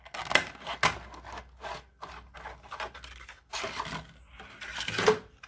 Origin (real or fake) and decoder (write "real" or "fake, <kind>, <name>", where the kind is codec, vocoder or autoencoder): real